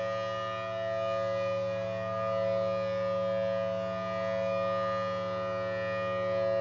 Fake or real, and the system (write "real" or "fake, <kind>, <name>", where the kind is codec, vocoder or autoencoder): real